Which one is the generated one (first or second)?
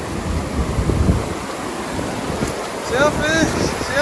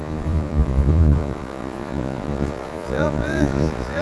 second